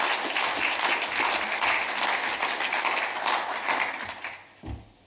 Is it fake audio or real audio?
real